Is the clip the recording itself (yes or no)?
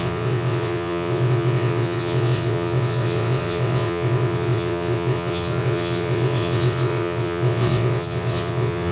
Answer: no